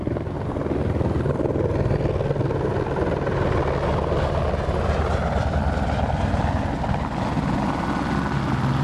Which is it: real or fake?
real